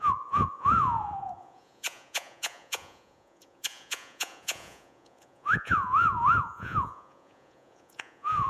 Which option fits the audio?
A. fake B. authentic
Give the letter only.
A